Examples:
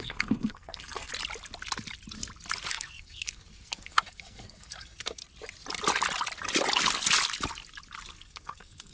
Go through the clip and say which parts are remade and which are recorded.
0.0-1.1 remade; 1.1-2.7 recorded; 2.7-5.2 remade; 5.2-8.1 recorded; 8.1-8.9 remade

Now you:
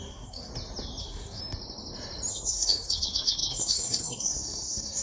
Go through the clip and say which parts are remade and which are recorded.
0.0-0.5 remade; 0.5-1.0 recorded; 1.0-1.4 remade; 1.4-2.3 recorded; 2.3-5.0 remade